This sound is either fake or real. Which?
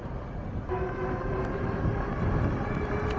real